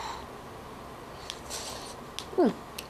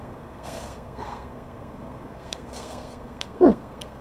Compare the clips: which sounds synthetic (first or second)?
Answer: second